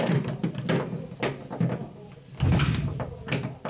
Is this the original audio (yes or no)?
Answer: yes